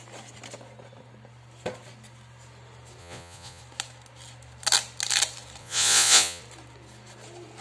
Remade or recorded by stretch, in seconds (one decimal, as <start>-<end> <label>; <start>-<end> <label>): 0.0-3.0 recorded; 3.0-3.6 remade; 3.6-5.6 recorded; 5.6-6.4 remade; 6.4-7.6 recorded